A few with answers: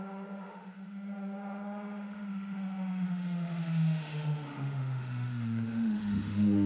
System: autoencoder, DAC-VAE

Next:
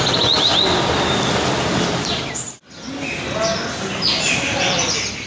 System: none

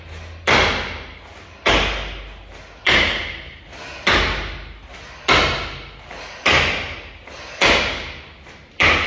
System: none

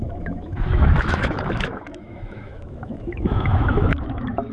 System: autoencoder, DAC-VAE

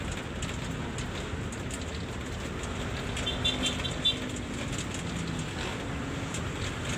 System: none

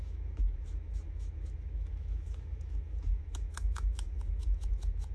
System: autoencoder, DAC-VAE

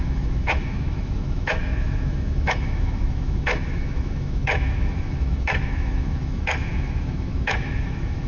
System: autoencoder, DAC-VAE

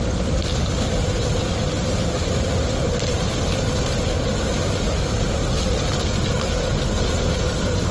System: none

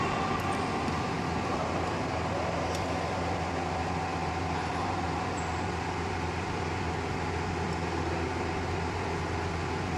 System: none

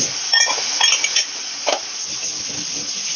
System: none